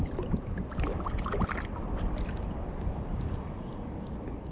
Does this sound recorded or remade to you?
recorded